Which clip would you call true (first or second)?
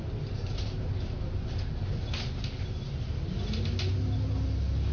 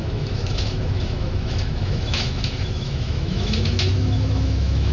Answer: first